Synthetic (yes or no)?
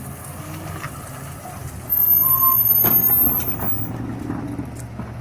no